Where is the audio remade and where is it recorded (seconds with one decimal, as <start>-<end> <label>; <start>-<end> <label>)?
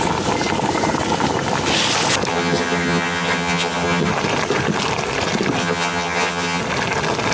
0.0-2.3 recorded; 2.3-4.1 remade; 4.1-5.6 recorded; 5.6-6.6 remade; 6.6-7.3 recorded